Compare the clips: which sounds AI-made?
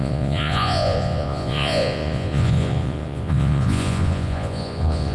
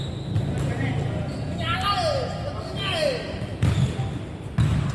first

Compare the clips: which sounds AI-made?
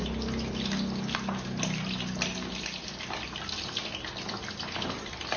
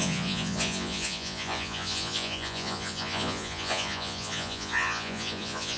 second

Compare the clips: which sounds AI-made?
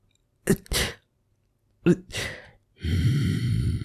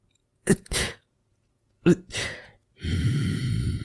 second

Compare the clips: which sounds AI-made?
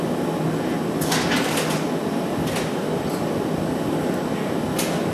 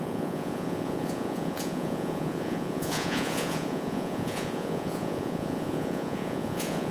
second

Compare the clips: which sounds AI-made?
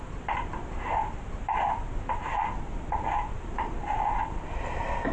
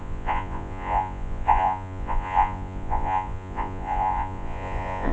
second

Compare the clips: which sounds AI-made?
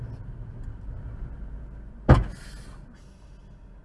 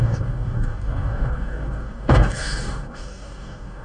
second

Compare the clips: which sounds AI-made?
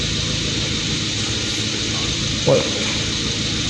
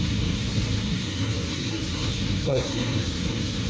second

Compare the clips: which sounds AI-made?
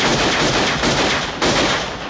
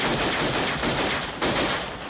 second